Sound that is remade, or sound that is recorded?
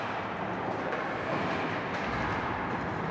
recorded